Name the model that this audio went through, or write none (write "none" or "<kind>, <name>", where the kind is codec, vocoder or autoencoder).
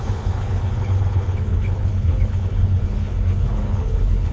codec, HILCodec